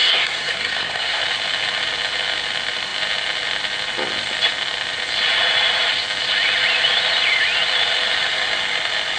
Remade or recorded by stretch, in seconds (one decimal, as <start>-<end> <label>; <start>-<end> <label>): 0.0-1.2 remade; 1.2-9.2 recorded